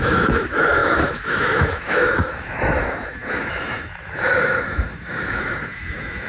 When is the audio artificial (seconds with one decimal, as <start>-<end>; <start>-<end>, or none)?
0.0-6.3